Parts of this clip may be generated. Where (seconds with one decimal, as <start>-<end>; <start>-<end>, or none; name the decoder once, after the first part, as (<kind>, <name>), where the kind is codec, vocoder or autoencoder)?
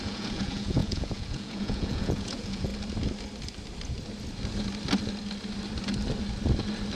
0.0-2.7 (vocoder, Vocos)